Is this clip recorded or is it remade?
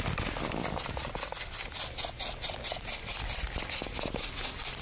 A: recorded